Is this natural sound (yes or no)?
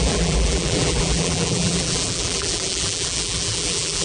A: no